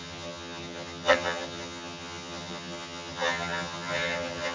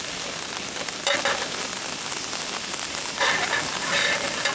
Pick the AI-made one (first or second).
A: first